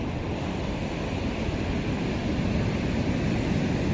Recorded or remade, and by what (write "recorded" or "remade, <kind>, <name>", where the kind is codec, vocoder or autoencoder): recorded